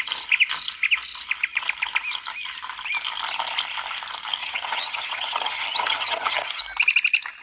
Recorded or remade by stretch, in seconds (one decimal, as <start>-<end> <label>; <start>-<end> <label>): 0.0-4.4 recorded; 4.4-6.6 remade; 6.6-7.4 recorded

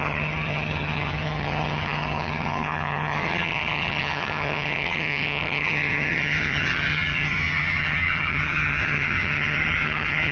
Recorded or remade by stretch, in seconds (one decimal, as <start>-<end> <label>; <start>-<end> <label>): 0.0-10.3 remade

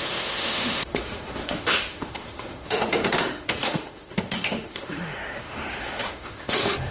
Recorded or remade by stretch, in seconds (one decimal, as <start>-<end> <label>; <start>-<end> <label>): 0.0-6.9 remade